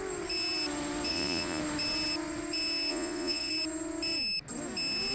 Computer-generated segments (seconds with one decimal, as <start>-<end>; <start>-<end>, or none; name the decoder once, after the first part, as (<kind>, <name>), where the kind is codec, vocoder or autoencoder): 1.1-1.6 (vocoder, Vocos); 2.9-3.5